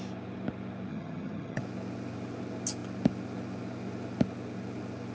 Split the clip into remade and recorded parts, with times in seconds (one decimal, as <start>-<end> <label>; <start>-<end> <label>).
0.0-0.9 recorded; 0.9-1.6 remade; 1.6-5.1 recorded